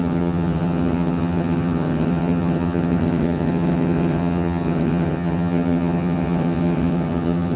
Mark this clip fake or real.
fake